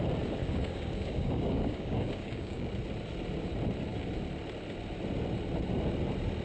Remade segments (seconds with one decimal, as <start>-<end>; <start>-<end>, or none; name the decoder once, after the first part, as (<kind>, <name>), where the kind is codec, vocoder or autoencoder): 0.4-2.7 (codec, DAC)